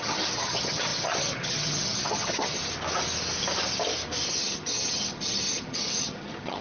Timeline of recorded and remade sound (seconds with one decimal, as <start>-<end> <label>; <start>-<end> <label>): 0.0-2.6 remade; 2.6-4.3 recorded; 4.3-6.6 remade